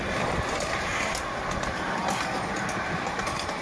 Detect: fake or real real